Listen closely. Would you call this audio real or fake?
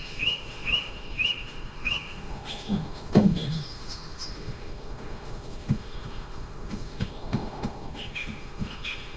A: fake